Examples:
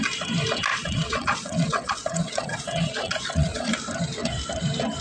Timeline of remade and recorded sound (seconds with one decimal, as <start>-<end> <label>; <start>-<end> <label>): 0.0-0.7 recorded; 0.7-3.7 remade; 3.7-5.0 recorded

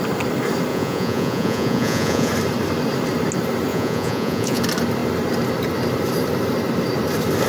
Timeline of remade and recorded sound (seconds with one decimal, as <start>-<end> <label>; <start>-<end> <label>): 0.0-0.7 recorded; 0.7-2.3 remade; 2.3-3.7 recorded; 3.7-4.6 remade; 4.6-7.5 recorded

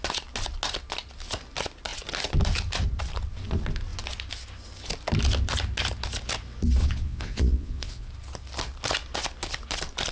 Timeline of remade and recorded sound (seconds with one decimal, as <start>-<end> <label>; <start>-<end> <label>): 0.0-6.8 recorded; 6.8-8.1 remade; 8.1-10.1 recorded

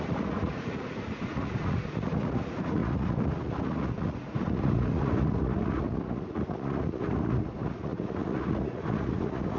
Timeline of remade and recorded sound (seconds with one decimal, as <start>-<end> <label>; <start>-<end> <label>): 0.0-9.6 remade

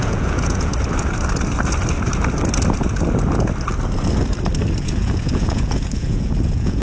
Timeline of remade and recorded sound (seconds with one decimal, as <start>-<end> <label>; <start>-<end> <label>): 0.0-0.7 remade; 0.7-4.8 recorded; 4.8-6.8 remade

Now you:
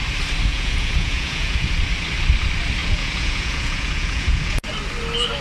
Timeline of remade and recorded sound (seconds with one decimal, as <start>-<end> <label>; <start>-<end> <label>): 0.0-0.5 recorded; 0.5-1.7 remade; 1.7-2.8 recorded; 2.8-4.7 remade; 4.7-5.4 recorded